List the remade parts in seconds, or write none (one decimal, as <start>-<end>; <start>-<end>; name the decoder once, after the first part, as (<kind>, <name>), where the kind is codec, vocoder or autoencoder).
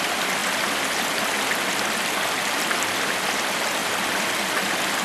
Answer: none